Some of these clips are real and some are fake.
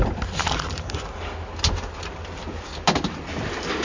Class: real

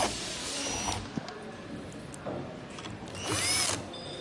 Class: real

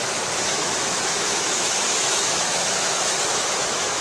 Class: fake